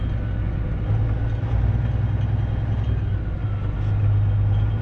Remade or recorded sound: recorded